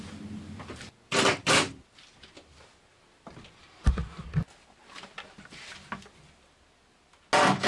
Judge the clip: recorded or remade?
recorded